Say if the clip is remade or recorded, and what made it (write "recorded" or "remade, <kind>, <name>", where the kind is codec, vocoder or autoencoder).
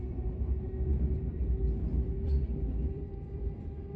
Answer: remade, vocoder, BigVGAN v2